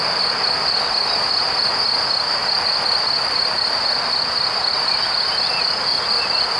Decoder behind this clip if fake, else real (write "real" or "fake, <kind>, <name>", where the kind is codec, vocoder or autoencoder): real